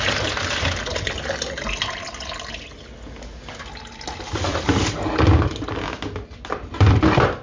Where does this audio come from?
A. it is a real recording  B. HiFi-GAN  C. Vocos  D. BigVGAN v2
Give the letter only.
A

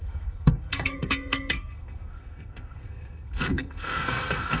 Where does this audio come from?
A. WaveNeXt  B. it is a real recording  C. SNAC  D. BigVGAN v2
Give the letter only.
C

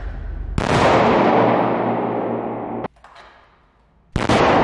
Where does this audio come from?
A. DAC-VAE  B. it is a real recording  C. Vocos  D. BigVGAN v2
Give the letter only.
B